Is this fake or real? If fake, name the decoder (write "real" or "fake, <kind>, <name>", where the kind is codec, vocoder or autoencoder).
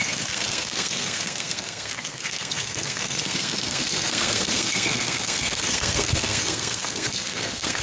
fake, codec, SNAC